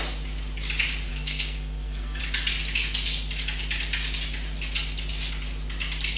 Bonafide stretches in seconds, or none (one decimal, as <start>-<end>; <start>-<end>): 0.0-1.1; 2.2-6.2

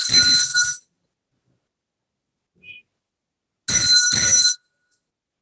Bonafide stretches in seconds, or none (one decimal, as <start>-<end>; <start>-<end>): 0.0-5.4

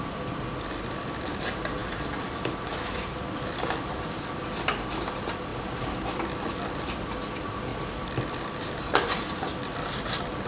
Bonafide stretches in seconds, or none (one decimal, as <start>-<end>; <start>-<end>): 0.0-10.5

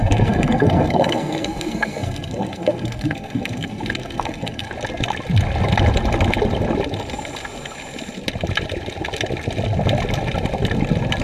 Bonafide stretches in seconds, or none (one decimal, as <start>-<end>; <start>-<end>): 4.7-11.2

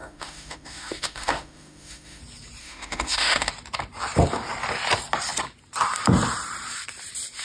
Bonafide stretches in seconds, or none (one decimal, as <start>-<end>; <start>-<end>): 2.2-2.6; 3.5-7.4

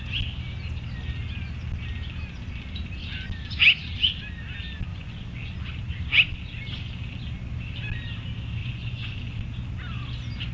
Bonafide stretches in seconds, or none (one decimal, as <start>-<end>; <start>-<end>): 0.0-4.9; 5.5-8.6; 9.2-10.5

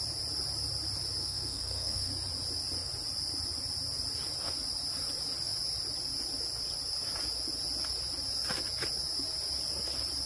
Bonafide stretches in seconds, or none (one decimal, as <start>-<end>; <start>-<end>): 0.0-1.2; 2.1-10.3

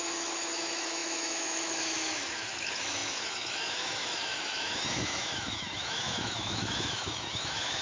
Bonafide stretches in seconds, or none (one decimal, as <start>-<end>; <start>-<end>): none